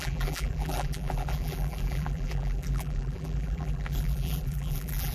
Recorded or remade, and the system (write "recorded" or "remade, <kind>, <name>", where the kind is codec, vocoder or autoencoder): remade, vocoder, BigVGAN v2